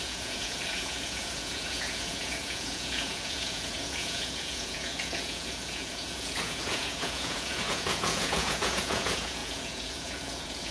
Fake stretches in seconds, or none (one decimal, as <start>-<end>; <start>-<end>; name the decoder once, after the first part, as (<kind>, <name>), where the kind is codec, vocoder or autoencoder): 0.0-10.7 (vocoder, Vocos)